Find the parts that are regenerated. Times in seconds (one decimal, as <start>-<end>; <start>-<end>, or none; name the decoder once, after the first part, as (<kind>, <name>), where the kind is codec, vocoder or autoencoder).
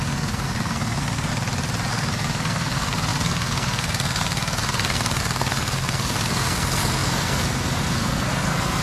0.0-1.3 (codec, SNAC); 1.9-8.8